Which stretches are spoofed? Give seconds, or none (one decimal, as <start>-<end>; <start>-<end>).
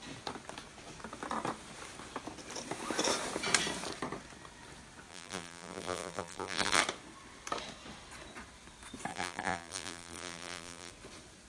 5.1-6.8; 9.1-10.9